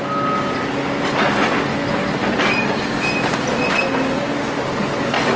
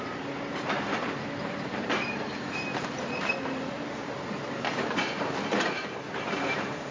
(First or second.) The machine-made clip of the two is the second